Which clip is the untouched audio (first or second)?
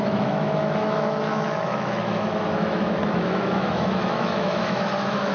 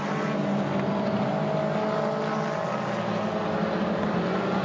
second